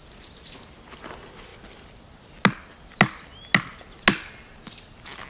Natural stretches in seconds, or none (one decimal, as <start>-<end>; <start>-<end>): 0.0-5.3